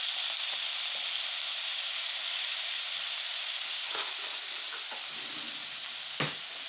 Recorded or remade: recorded